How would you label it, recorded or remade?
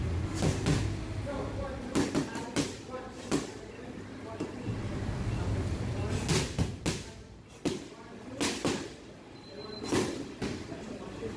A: recorded